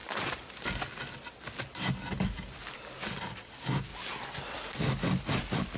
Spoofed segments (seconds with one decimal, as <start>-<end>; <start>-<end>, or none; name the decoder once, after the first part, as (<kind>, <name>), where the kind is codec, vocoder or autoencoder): none